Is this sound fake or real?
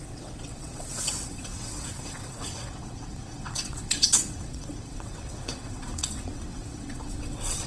fake